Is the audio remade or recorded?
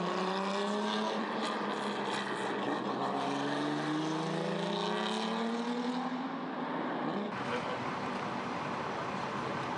recorded